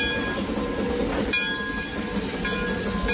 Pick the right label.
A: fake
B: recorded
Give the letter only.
B